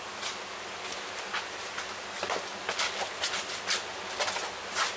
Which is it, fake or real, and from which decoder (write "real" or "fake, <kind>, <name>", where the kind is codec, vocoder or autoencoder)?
real